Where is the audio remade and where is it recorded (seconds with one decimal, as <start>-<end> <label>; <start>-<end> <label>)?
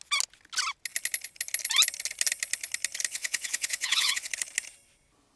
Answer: 0.0-3.1 recorded; 3.1-4.3 remade; 4.3-5.4 recorded